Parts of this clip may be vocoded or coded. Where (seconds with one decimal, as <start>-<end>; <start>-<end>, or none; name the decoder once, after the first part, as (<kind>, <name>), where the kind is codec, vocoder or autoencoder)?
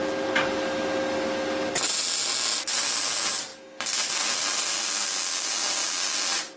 none